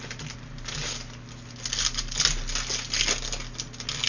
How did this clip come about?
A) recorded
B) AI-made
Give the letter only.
A